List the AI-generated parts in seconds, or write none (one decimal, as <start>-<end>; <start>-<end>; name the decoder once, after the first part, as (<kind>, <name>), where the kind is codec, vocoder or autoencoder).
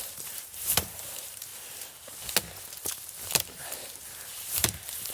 0.0-1.5 (vocoder, BigVGAN v2); 2.8-5.1